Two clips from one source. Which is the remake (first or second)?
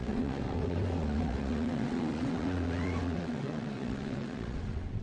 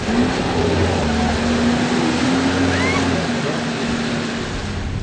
first